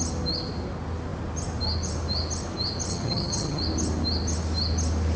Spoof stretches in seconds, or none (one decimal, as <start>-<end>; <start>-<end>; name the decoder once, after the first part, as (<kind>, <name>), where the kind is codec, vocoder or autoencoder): 2.9-3.6 (vocoder, HiFi-GAN)